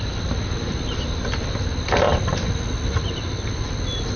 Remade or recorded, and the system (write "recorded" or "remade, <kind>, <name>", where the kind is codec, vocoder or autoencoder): recorded